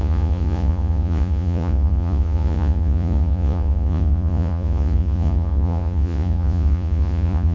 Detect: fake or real fake